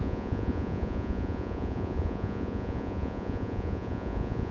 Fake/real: fake